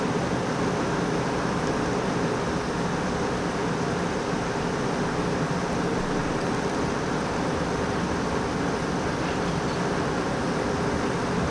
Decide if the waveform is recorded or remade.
recorded